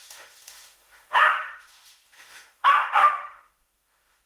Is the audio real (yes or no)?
no